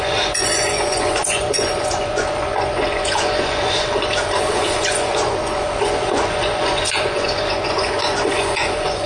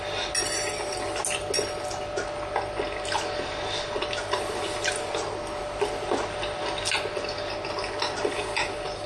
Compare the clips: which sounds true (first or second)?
second